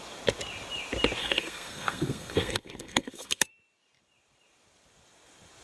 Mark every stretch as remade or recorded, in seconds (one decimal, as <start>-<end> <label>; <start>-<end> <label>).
0.0-1.2 recorded; 1.2-3.5 remade; 3.5-5.6 recorded

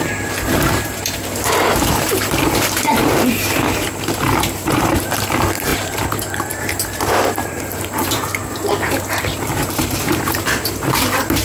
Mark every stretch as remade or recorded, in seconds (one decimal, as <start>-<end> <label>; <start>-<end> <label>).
0.0-8.4 remade; 8.4-9.2 recorded; 9.2-11.4 remade

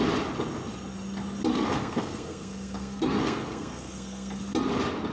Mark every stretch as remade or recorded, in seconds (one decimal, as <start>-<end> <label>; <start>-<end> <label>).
0.0-1.5 recorded; 1.5-4.4 remade; 4.4-5.1 recorded

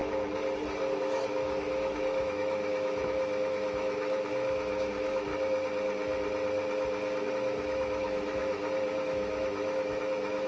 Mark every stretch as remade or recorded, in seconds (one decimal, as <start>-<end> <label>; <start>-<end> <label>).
0.0-1.0 recorded; 1.0-5.3 remade; 5.3-7.3 recorded; 7.3-10.5 remade

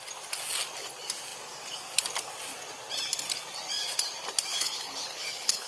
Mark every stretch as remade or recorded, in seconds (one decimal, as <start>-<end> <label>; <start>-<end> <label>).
0.0-4.5 recorded; 4.5-5.7 remade

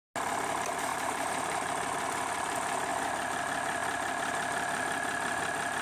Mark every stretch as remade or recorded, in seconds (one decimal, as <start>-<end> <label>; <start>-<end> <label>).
0.0-0.9 recorded; 0.9-1.7 remade; 1.7-5.8 recorded

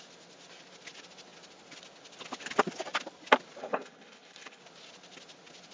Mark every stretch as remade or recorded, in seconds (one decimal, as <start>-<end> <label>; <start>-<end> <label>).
0.0-3.6 recorded; 3.6-4.6 remade; 4.6-5.7 recorded